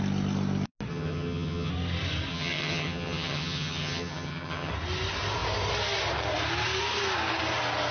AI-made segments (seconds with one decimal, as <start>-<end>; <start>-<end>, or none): 0.9-1.7; 2.3-4.7